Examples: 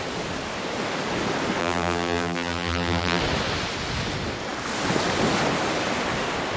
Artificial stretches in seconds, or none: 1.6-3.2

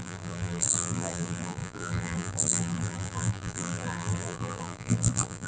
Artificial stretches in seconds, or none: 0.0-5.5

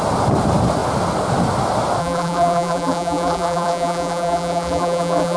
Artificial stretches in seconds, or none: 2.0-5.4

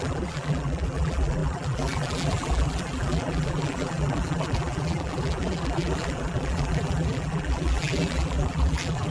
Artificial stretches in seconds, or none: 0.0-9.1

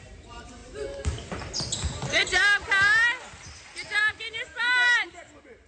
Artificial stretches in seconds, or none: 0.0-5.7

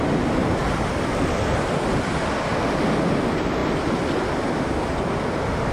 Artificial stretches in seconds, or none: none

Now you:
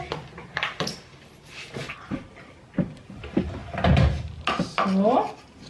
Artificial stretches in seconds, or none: 0.4-2.2

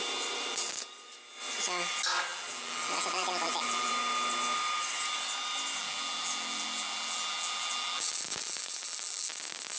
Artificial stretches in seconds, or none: 2.3-3.9; 5.8-9.3